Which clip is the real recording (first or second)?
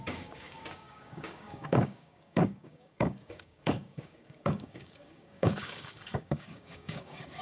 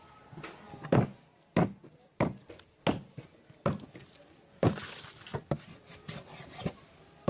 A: second